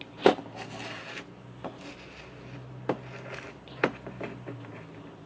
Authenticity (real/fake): real